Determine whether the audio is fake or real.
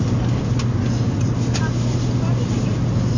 real